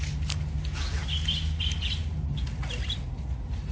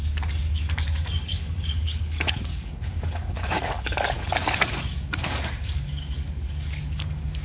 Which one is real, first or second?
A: first